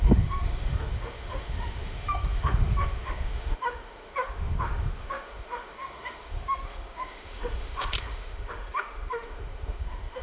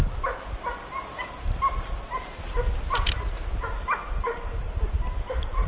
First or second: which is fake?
first